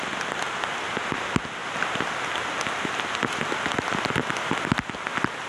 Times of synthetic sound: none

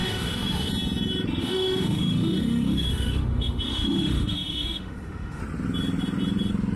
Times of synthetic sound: 0.0-0.7; 1.4-5.4

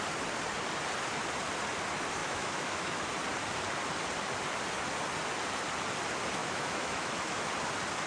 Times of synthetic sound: 2.2-3.1; 6.4-7.5

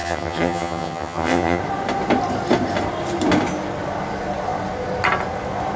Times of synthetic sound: 0.0-1.6

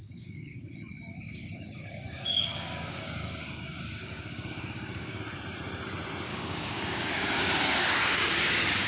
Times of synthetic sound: 0.0-5.2; 6.3-8.9

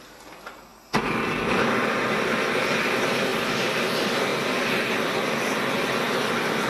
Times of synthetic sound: none

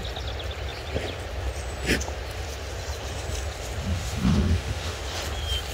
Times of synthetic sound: 3.9-5.0